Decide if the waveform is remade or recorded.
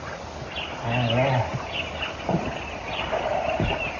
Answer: recorded